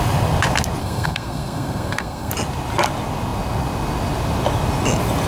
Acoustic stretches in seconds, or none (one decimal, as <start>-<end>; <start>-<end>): 0.0-0.8; 2.3-5.3